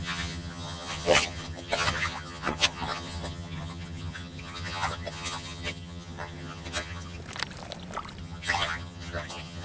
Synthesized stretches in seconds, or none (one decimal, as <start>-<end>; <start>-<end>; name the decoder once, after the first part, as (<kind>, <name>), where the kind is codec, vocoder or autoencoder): 0.0-7.2 (vocoder, HiFi-GAN); 8.2-9.6